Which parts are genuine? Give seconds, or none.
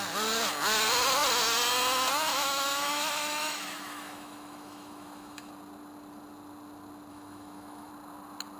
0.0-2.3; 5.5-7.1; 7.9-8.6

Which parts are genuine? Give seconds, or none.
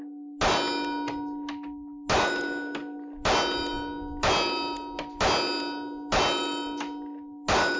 0.0-7.8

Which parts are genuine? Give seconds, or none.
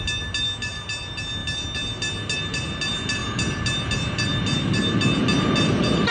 0.0-6.1